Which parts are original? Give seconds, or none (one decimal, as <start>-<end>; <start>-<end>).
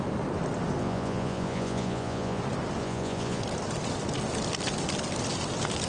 0.0-0.8; 2.4-2.8; 3.4-5.9